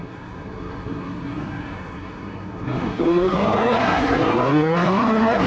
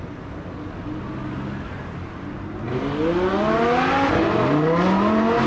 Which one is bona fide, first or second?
second